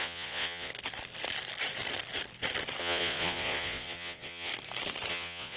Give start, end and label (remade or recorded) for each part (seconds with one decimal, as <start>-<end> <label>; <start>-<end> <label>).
0.0-0.7 remade; 0.7-2.8 recorded; 2.8-4.5 remade; 4.5-5.1 recorded; 5.1-5.6 remade